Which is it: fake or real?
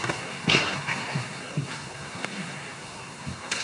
fake